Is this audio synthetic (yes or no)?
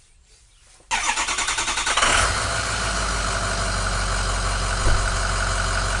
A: no